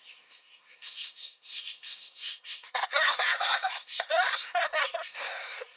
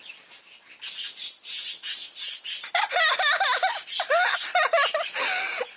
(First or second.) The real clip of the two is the second